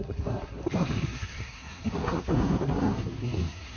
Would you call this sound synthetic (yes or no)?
yes